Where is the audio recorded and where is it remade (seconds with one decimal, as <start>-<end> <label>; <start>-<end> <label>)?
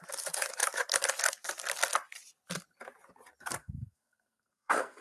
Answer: 0.0-3.6 recorded; 3.6-5.0 remade